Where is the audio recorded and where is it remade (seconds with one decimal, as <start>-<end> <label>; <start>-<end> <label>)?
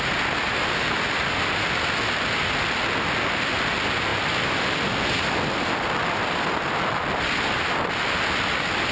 0.0-8.9 recorded